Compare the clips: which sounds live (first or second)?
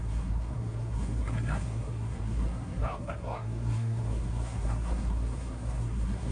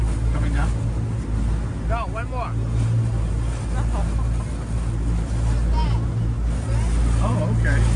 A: second